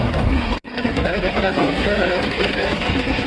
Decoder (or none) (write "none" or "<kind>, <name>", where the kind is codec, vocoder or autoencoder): codec, SNAC